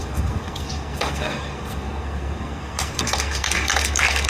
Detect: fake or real fake